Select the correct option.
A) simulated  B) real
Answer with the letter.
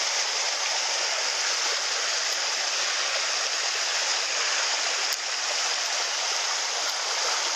B